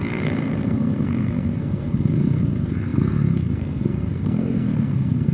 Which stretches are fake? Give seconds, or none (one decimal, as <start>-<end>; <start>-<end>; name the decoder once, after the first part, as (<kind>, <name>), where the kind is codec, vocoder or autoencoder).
0.0-5.3 (codec, SNAC)